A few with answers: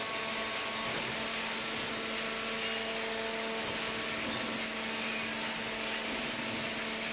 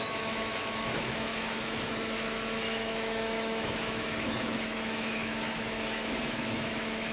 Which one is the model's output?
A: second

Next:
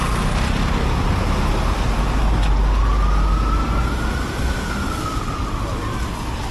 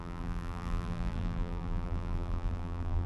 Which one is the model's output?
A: second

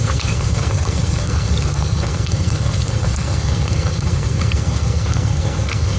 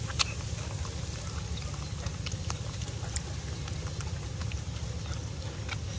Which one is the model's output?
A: first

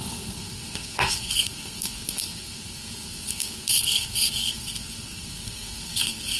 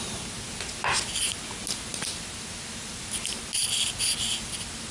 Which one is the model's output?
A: first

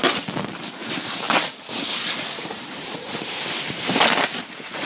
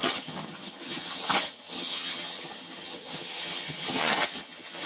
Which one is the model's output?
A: second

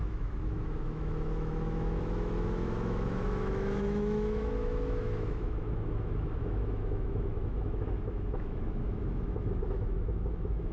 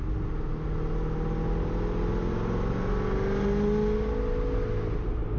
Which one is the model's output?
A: first